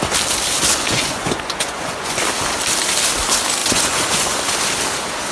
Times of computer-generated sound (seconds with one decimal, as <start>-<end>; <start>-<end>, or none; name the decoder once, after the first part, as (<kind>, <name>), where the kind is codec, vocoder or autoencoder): 0.7-2.2 (vocoder, Vocos); 3.6-4.4